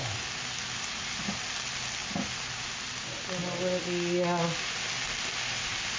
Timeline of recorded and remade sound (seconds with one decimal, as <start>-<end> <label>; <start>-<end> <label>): 0.0-6.0 recorded